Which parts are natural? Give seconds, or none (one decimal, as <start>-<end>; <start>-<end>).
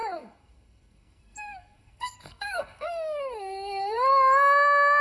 4.1-5.0